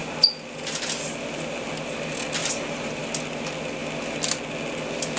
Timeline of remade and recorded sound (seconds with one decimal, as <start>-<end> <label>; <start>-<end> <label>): 0.0-2.4 recorded; 2.4-3.1 remade; 3.1-5.2 recorded